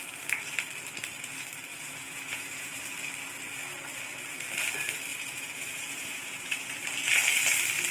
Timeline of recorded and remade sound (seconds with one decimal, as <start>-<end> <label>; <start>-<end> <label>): 0.0-1.7 recorded; 1.7-2.8 remade; 2.8-5.1 recorded; 5.1-6.7 remade; 6.7-7.9 recorded